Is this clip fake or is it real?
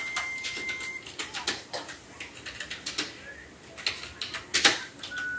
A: real